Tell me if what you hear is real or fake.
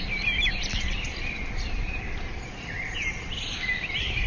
fake